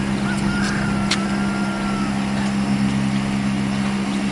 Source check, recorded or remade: recorded